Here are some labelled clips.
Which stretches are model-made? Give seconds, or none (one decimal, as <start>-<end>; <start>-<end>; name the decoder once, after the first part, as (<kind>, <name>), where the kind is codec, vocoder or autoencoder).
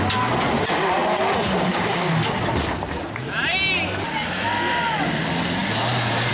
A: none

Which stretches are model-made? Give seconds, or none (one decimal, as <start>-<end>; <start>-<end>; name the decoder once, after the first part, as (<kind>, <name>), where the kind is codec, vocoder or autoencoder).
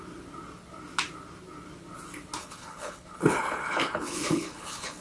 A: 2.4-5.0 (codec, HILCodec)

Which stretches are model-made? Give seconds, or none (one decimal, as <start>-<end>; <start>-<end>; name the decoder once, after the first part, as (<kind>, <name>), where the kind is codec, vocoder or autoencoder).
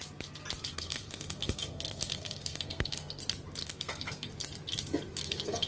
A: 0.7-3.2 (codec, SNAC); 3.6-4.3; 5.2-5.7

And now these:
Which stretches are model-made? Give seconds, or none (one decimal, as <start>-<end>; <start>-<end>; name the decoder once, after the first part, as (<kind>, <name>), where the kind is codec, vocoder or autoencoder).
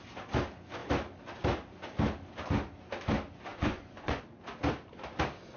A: 3.5-4.2 (vocoder, Vocos)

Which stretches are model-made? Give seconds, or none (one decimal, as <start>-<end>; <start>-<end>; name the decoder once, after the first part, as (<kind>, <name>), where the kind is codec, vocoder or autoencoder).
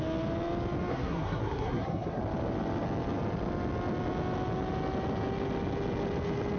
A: 0.9-2.2 (codec, SNAC)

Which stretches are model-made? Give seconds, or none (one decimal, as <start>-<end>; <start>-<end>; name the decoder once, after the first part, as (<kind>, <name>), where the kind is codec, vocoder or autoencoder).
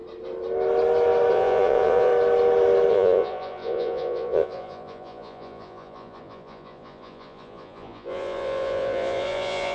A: 1.3-2.1 (vocoder, Vocos); 2.9-9.7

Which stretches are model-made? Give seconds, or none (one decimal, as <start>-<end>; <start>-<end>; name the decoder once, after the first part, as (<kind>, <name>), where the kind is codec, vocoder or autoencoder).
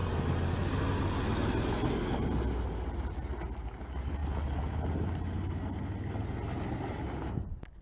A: 4.2-5.8 (vocoder, BigVGAN v2)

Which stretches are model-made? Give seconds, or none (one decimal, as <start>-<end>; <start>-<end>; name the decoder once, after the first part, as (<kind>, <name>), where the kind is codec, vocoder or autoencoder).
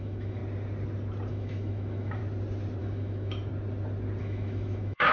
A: 0.0-0.4 (autoencoder, DAC-VAE); 1.3-2.2; 2.8-3.5; 4.2-5.1